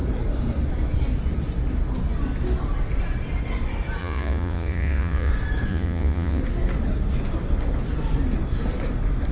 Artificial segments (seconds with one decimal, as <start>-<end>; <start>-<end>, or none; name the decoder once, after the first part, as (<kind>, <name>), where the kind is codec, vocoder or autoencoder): 4.0-5.3 (vocoder, Vocos); 5.7-6.4